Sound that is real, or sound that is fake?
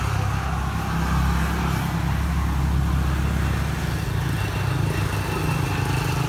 real